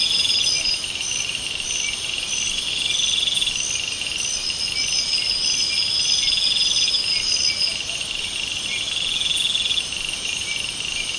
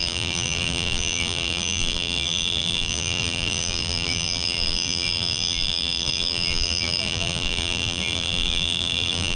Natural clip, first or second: first